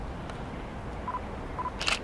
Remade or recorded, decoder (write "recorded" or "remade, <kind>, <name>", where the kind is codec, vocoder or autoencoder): recorded